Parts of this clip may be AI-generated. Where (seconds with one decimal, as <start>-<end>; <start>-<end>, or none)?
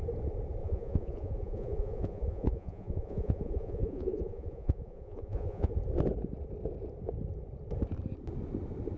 0.6-5.7